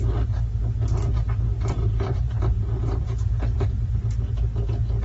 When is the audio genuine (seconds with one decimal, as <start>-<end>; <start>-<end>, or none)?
0.0-1.8; 3.7-5.0